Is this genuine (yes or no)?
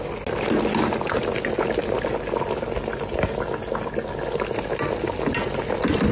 yes